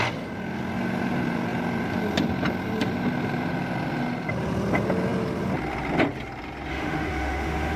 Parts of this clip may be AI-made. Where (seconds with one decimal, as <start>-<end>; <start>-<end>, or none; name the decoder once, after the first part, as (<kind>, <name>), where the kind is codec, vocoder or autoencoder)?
6.7-7.8 (autoencoder, DAC-VAE)